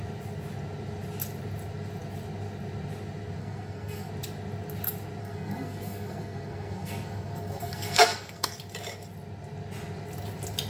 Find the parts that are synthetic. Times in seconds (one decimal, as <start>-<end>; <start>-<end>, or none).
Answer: 3.4-4.1; 5.2-8.5